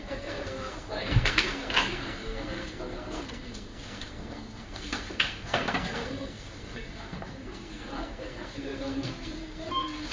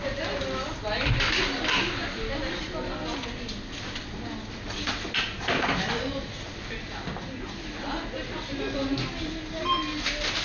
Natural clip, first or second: second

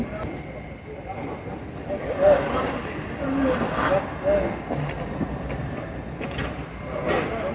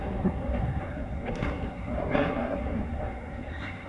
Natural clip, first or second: first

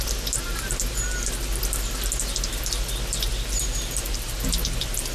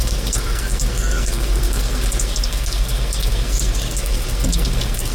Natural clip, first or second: first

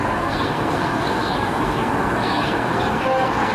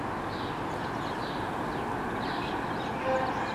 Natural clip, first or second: second